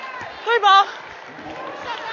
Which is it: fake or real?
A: real